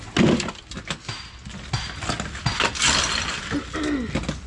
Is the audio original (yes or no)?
yes